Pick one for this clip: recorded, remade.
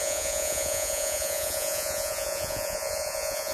remade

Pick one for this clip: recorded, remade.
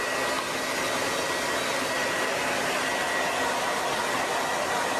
recorded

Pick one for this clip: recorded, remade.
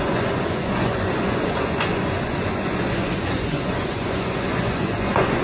remade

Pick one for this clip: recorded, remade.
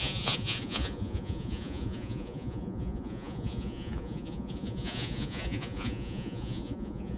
remade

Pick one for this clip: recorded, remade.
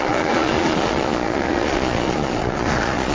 remade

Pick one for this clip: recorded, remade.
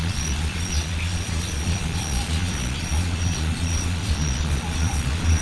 remade